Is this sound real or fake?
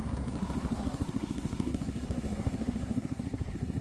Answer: fake